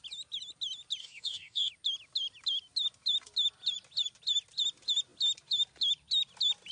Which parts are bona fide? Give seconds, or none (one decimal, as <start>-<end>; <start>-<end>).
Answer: 0.0-1.0; 1.7-6.7